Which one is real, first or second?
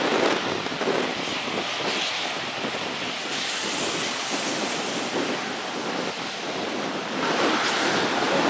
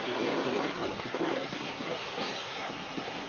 first